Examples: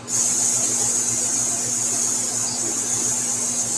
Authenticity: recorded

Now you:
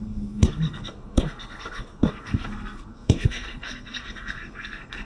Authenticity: remade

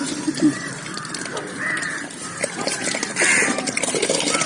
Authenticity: remade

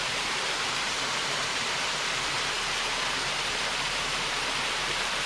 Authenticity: remade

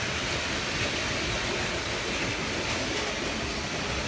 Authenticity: recorded